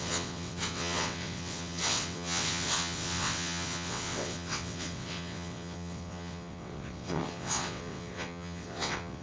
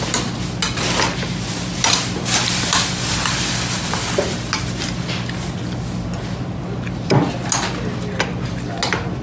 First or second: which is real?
second